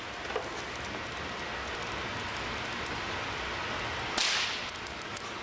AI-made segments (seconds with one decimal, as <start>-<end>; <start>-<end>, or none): none